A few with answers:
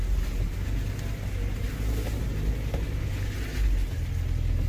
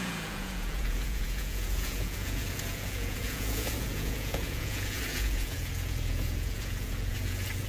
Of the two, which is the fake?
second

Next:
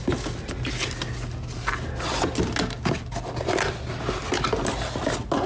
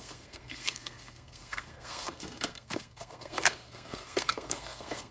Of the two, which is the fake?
second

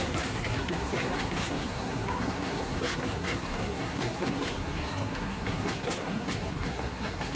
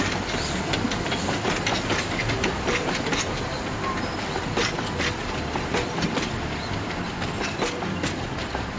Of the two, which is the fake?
first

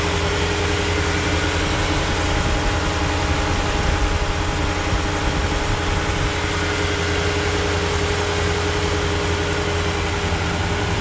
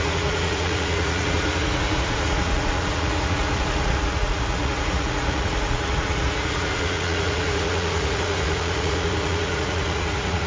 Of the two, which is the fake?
second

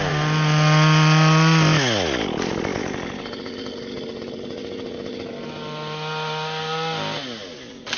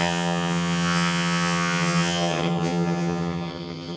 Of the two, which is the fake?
second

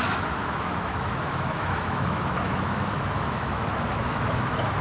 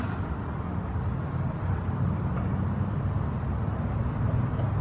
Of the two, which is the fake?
first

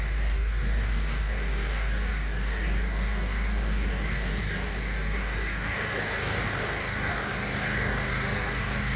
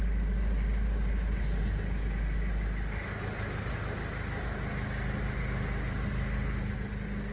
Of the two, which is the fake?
first